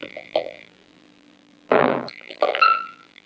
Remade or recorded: remade